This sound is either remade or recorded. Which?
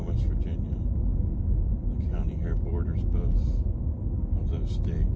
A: remade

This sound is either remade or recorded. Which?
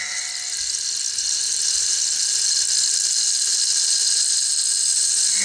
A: recorded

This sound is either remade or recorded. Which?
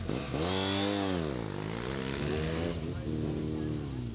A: recorded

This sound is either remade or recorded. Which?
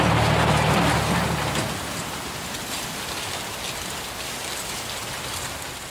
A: recorded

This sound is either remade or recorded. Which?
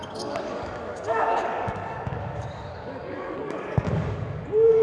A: remade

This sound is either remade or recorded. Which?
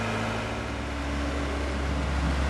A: recorded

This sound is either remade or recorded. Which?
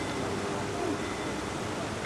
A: recorded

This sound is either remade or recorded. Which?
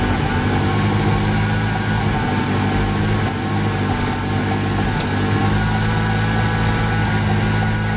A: recorded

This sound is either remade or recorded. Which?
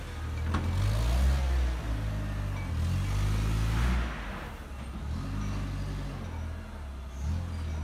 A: recorded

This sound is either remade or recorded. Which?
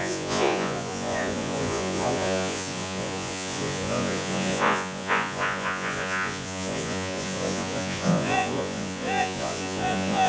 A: remade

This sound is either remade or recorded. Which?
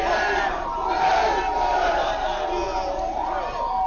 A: recorded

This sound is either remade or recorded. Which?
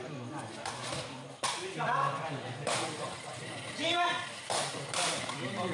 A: remade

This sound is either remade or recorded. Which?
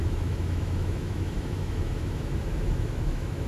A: remade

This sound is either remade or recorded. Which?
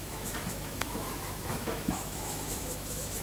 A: remade